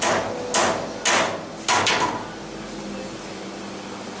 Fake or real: real